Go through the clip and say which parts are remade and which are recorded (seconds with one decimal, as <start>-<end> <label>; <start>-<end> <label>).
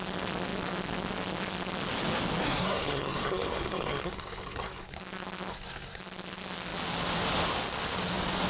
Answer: 0.0-2.4 recorded; 2.4-5.0 remade; 5.0-5.5 recorded; 5.5-6.0 remade; 6.0-8.5 recorded